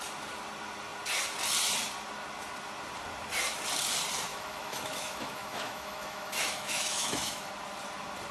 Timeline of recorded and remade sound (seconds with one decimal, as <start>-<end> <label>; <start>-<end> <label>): 0.0-4.3 recorded; 4.3-7.5 remade; 7.5-8.3 recorded